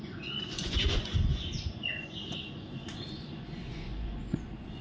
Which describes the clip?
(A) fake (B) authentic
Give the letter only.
A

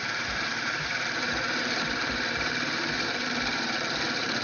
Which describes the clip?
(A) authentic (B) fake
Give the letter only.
B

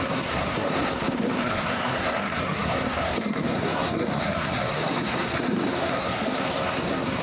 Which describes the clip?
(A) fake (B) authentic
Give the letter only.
A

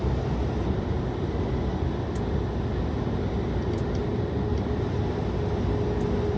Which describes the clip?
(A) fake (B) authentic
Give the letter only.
B